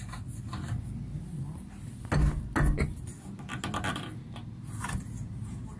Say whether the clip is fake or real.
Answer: real